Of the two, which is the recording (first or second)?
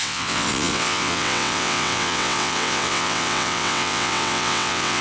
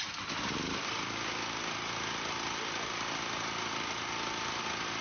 second